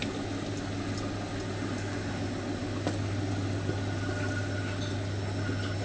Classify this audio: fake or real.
real